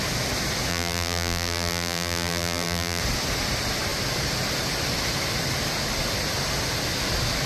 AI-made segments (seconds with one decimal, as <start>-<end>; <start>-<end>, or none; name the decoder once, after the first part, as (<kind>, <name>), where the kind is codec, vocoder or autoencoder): 0.7-3.0 (vocoder, BigVGAN v2)